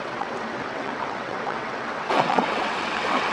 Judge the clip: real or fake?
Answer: fake